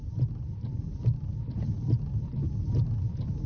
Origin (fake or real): real